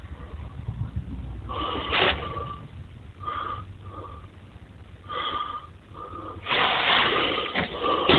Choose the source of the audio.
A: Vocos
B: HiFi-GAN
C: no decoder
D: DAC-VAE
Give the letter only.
C